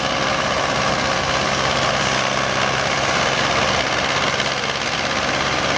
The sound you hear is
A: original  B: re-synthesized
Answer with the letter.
A